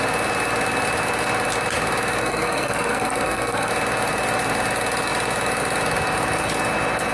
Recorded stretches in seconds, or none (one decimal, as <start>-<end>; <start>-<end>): 0.0-2.2; 3.7-7.1